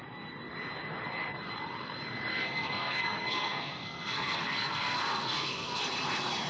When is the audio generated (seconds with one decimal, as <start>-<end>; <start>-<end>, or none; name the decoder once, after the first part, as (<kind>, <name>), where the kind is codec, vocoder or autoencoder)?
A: 2.3-5.8 (codec, SNAC)